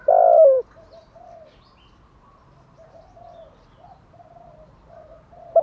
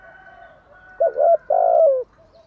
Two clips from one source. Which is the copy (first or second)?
first